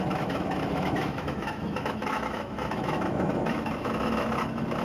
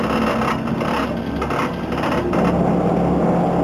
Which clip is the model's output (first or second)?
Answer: first